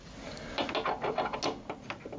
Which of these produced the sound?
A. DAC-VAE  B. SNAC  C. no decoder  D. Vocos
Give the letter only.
C